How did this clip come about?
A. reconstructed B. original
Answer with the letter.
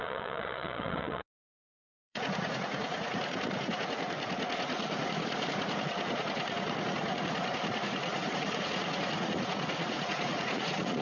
A